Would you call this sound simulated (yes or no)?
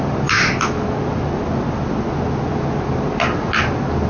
no